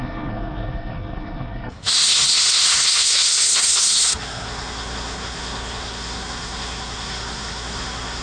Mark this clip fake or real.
fake